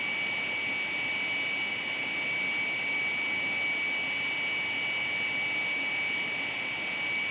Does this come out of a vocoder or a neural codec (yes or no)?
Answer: no